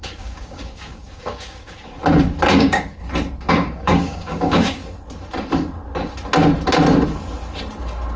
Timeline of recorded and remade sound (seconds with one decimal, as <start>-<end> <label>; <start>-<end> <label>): 0.0-2.0 remade; 2.0-2.5 recorded; 2.5-3.0 remade; 3.0-3.5 recorded; 3.5-4.8 remade; 4.8-8.2 recorded